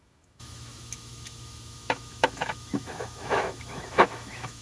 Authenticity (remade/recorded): remade